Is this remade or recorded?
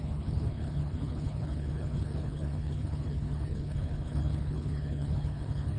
remade